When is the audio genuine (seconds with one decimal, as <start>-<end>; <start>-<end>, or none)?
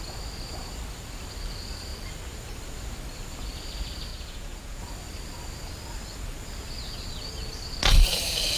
0.0-4.1; 4.8-8.6